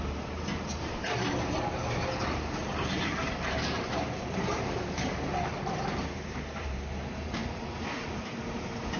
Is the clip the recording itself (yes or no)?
no